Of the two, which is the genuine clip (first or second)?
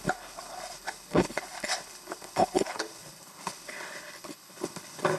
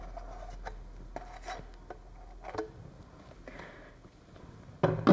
second